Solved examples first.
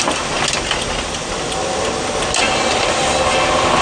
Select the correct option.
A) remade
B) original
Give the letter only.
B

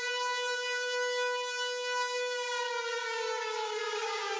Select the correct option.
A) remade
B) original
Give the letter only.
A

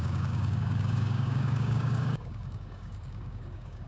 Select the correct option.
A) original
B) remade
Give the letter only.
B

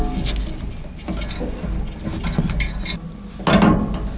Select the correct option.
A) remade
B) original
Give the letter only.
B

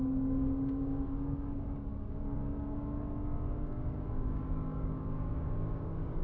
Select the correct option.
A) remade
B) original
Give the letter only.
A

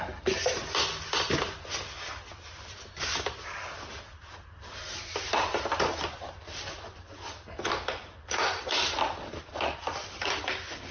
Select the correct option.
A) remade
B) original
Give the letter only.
B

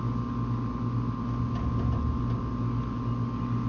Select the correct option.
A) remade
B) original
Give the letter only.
B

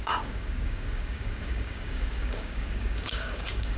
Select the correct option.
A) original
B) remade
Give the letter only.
B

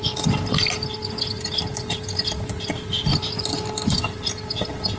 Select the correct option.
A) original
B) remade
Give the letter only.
A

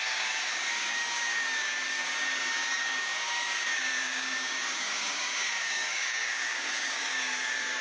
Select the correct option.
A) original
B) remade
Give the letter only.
B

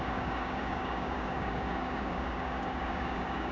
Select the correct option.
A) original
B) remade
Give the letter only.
B